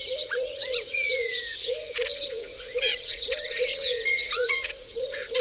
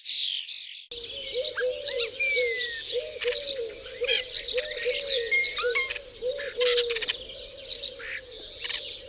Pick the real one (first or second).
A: second